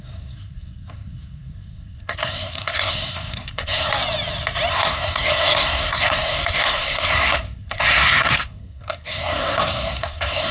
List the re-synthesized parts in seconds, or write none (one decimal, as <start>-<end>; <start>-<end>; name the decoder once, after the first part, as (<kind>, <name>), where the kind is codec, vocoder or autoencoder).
0.0-3.9 (codec, SNAC); 4.7-10.5